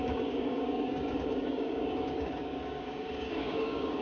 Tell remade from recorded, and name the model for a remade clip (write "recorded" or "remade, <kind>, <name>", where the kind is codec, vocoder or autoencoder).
remade, codec, DAC